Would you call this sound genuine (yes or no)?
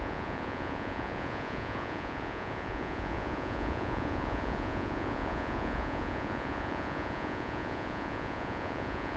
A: no